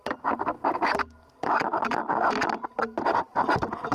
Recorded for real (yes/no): yes